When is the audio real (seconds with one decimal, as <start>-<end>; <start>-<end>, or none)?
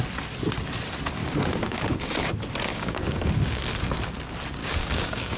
0.0-1.2; 2.3-2.7; 3.6-4.6